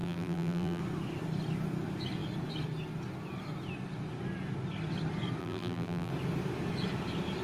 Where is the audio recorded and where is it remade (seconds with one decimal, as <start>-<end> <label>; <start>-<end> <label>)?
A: 0.0-0.8 remade; 0.8-5.4 recorded; 5.4-6.1 remade; 6.1-7.4 recorded